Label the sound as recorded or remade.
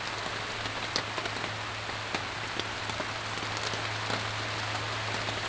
recorded